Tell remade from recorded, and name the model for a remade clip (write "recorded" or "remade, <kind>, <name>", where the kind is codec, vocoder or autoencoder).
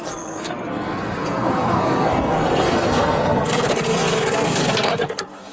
remade, codec, SNAC